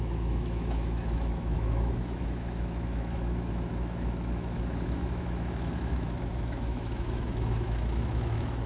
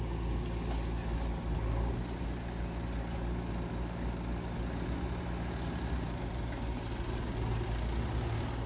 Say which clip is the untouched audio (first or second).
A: second